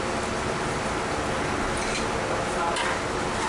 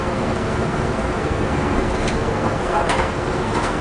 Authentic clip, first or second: first